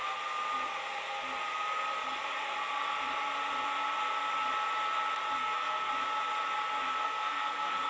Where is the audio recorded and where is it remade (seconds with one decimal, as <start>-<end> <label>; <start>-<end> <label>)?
0.0-5.4 recorded; 5.4-5.9 remade; 5.9-6.9 recorded; 6.9-7.9 remade